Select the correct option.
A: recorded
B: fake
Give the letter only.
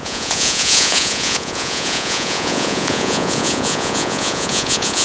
B